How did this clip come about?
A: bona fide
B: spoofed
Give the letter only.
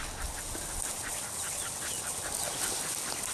A